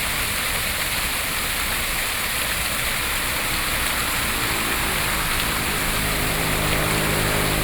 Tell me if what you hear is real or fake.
real